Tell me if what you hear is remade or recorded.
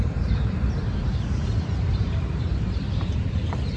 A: remade